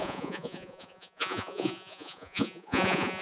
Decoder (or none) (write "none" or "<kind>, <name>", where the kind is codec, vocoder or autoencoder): vocoder, Vocos